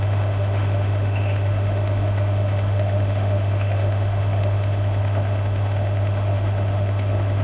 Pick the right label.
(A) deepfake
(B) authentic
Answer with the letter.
A